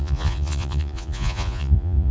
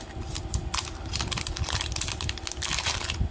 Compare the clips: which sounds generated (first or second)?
first